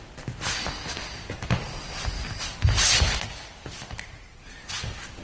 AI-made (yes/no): no